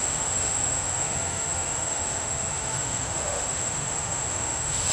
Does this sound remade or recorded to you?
remade